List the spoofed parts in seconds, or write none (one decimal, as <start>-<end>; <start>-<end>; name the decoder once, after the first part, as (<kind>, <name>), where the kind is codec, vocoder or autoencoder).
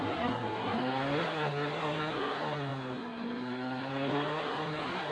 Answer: 0.0-5.1 (codec, SNAC)